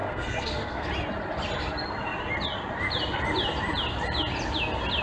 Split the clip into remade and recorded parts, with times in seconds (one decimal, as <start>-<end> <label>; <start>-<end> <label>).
0.0-0.9 remade; 0.9-5.0 recorded